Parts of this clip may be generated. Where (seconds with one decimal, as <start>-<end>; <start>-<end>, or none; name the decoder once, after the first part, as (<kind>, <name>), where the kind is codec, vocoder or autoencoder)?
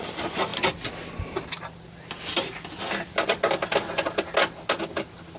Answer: none